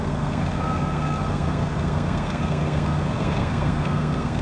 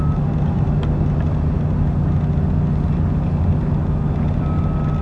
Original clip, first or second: second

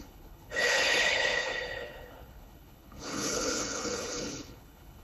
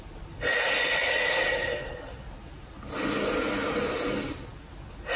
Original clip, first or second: second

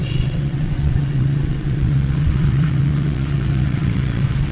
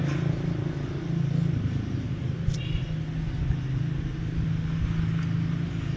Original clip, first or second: second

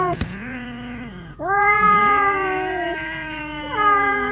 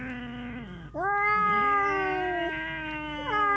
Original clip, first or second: second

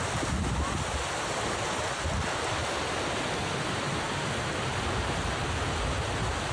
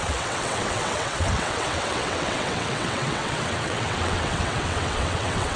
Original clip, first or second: first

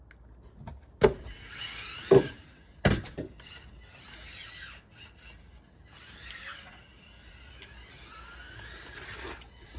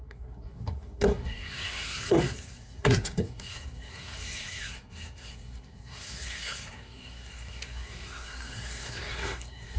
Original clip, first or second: first